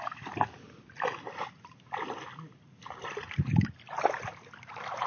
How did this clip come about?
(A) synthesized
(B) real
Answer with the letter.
B